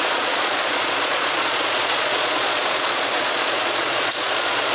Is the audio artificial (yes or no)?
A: yes